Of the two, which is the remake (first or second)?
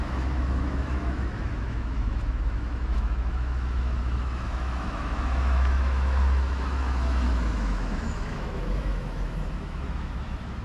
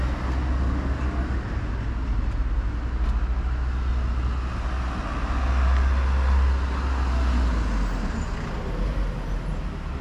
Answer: first